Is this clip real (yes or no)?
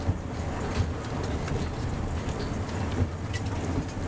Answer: yes